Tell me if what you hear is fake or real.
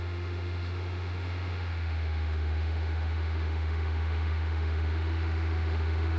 fake